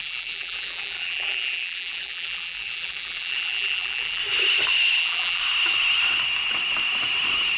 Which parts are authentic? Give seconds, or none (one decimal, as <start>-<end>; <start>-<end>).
4.2-5.0; 5.4-7.6